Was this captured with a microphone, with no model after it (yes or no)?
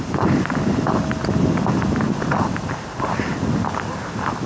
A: no